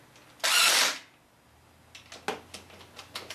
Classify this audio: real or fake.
real